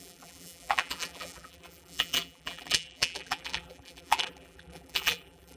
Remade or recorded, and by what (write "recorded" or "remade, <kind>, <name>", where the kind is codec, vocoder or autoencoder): remade, vocoder, BigVGAN v2